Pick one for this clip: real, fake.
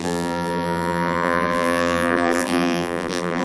fake